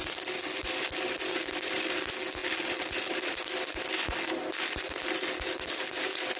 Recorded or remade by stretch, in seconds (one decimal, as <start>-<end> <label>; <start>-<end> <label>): 0.0-6.4 recorded